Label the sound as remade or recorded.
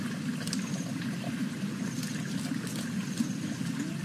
recorded